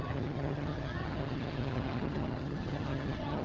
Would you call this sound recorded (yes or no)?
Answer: no